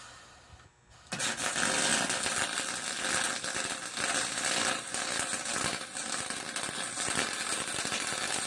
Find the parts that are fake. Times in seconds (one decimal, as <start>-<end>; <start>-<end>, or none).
none